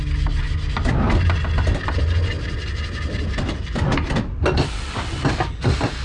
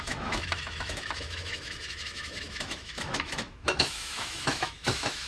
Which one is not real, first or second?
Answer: second